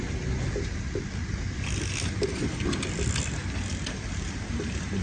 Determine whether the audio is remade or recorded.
recorded